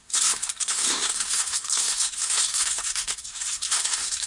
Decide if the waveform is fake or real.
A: fake